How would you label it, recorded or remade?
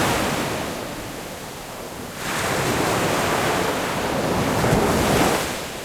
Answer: recorded